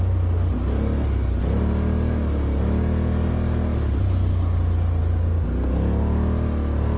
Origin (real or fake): real